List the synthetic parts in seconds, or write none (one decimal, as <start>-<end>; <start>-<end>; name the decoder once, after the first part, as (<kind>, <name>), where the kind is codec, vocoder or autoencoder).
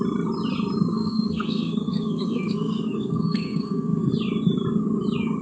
0.9-4.1 (codec, SNAC)